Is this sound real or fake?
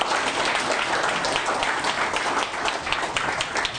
real